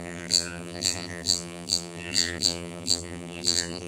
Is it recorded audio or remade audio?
remade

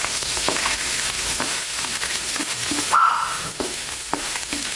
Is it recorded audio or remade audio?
remade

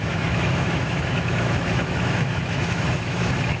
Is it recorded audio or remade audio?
remade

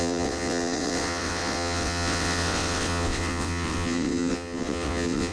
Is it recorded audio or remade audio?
remade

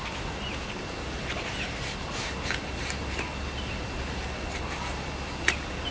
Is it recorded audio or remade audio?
recorded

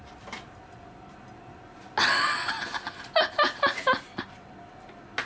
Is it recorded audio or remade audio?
recorded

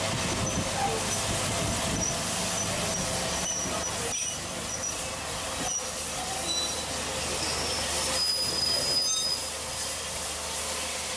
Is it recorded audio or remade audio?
recorded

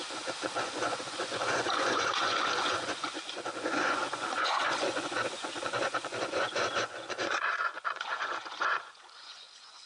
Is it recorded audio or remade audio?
remade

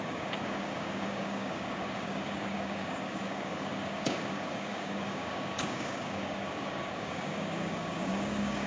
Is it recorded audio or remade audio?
remade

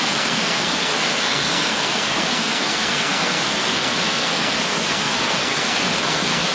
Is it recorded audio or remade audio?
remade